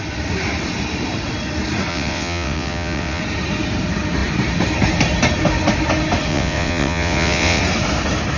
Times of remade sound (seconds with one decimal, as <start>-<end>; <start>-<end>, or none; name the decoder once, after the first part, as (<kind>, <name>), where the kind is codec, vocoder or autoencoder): 1.9-3.2 (vocoder, WaveNeXt); 6.3-7.6